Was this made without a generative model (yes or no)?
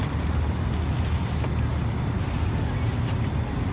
yes